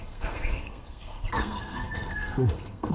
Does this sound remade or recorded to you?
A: remade